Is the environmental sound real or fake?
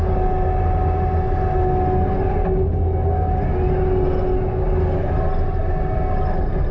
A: real